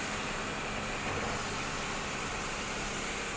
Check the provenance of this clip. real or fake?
real